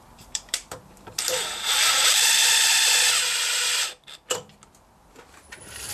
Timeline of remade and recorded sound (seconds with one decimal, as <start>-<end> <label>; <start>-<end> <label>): 0.0-2.4 remade; 2.4-5.5 recorded; 5.5-5.9 remade